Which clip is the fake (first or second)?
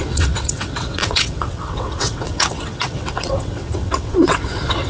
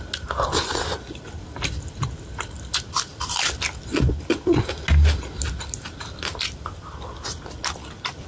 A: first